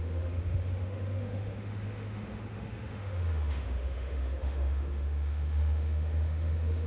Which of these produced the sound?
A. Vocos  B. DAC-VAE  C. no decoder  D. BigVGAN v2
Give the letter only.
B